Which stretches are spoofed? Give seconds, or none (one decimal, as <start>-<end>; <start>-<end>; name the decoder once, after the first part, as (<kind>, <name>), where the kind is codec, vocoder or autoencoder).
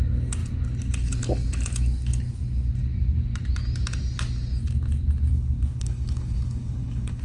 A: 5.3-7.2 (codec, HILCodec)